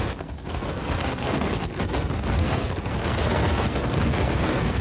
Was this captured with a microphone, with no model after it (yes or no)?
no